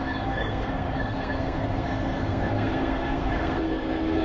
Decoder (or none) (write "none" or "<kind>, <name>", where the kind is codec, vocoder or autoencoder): codec, SNAC